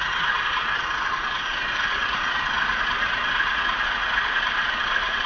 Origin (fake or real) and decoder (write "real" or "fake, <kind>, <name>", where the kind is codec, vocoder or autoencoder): fake, vocoder, Vocos